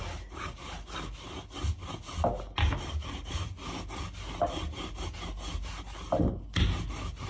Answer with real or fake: real